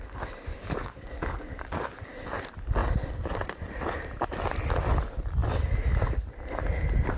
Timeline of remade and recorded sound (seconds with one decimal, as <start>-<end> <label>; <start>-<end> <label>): 0.0-0.5 recorded; 0.5-2.0 remade; 2.0-7.2 recorded